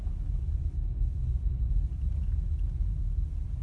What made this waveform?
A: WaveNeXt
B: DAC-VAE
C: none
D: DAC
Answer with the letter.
C